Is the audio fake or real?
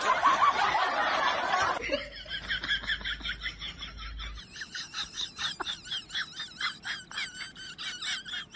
real